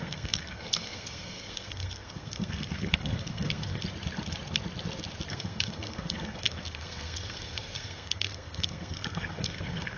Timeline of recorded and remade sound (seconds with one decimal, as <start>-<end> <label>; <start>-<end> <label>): 0.0-3.8 remade; 3.8-5.3 recorded; 5.3-10.0 remade